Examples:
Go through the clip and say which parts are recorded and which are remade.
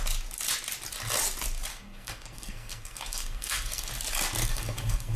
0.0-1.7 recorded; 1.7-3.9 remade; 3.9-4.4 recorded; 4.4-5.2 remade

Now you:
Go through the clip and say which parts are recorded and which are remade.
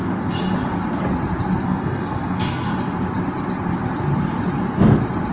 0.0-1.6 recorded; 1.6-2.7 remade; 2.7-5.3 recorded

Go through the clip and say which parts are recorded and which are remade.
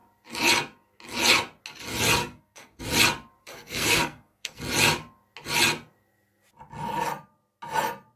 0.0-2.2 recorded; 2.2-2.8 remade; 2.8-3.4 recorded; 3.4-4.6 remade; 4.6-8.2 recorded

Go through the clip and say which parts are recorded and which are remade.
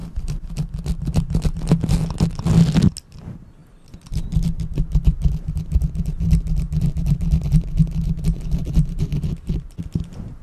0.0-10.4 recorded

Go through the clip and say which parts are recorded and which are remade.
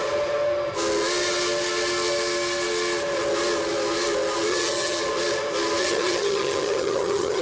0.0-4.5 recorded; 4.5-5.0 remade; 5.0-5.8 recorded; 5.8-7.4 remade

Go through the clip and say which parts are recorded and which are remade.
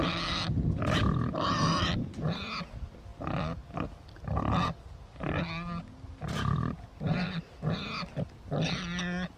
0.0-9.4 recorded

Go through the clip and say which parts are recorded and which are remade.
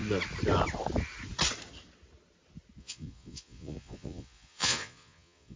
0.0-2.8 recorded; 2.8-5.6 remade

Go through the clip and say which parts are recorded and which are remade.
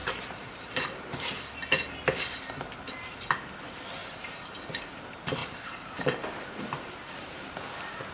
0.0-1.2 remade; 1.2-4.0 recorded; 4.0-4.7 remade; 4.7-5.4 recorded; 5.4-8.1 remade